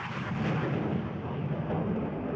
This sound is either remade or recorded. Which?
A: recorded